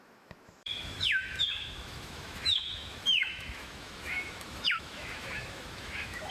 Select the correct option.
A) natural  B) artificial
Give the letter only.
B